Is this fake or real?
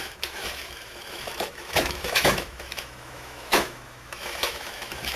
fake